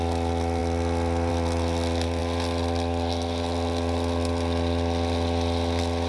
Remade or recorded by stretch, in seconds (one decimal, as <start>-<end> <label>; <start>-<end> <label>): 0.0-6.1 recorded